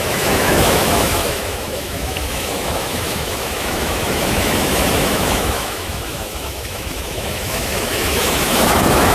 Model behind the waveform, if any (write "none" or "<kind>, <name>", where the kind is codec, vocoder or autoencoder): autoencoder, DAC-VAE